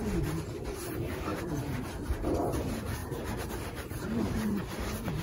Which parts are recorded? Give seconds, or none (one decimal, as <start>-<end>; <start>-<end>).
0.0-1.3; 2.1-3.0; 4.7-5.2